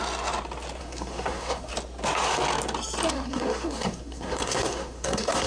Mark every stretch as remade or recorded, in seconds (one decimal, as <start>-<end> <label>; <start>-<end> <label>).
0.0-0.8 recorded; 0.8-1.7 remade; 1.7-3.1 recorded; 3.1-5.5 remade